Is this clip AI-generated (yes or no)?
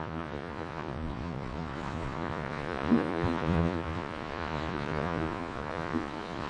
yes